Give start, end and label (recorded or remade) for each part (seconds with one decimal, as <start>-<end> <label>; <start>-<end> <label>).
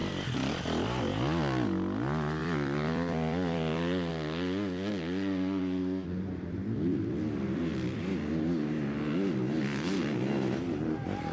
0.0-0.6 remade; 0.6-2.4 recorded; 2.4-4.1 remade; 4.1-5.8 recorded; 5.8-8.3 remade; 8.3-11.3 recorded